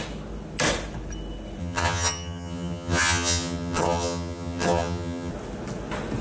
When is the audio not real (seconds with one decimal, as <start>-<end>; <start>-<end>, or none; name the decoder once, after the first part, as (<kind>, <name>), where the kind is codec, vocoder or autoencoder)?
1.6-5.3 (vocoder, HiFi-GAN)